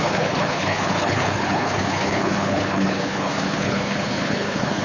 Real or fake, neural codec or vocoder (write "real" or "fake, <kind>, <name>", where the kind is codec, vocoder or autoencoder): fake, codec, HILCodec